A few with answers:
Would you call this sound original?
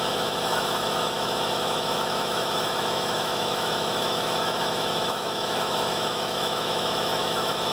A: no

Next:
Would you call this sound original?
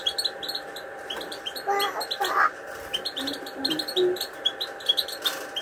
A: yes